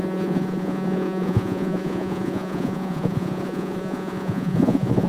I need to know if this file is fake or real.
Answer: fake